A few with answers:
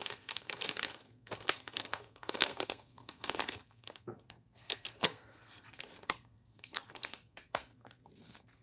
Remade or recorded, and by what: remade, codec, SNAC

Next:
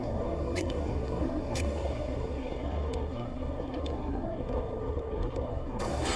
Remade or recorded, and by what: remade, codec, SNAC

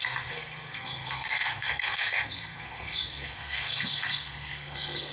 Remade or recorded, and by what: remade, codec, SNAC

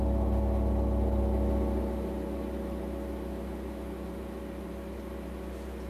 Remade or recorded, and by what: recorded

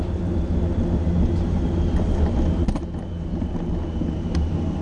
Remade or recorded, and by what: recorded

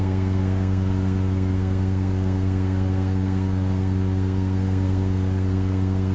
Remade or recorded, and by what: remade, codec, SNAC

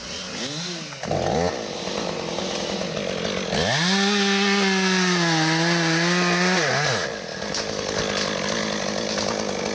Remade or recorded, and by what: recorded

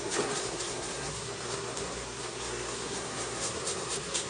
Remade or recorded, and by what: remade, codec, SNAC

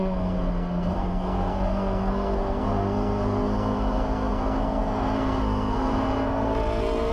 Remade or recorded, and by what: remade, codec, SNAC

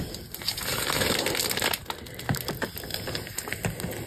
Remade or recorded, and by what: recorded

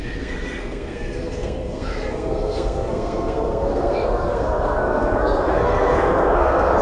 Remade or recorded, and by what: remade, codec, SNAC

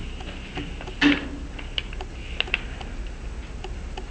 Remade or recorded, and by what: recorded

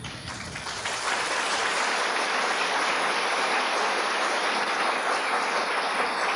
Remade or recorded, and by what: recorded